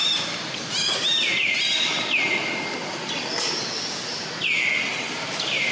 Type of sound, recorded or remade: recorded